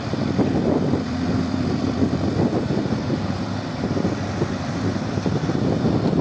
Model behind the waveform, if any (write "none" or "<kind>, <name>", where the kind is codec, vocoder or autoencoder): vocoder, BigVGAN v2